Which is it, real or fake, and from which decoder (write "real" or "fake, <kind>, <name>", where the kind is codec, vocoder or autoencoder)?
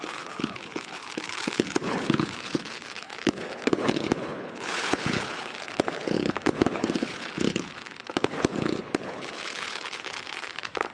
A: fake, codec, HILCodec